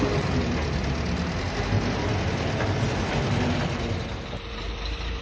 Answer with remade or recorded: recorded